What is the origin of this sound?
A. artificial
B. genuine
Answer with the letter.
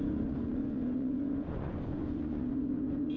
A